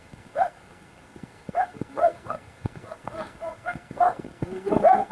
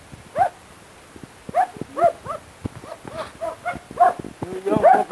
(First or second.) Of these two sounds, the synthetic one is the first